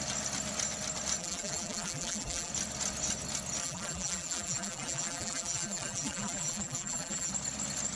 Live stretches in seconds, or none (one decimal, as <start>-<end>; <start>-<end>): 0.0-1.2; 2.5-3.6; 7.3-8.0